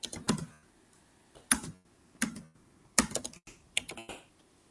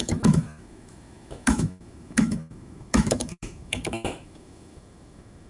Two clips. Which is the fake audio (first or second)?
second